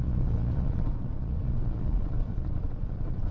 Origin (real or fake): fake